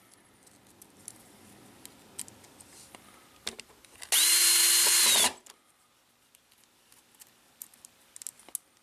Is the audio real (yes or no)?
yes